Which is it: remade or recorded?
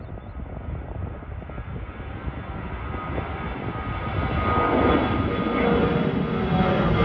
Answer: recorded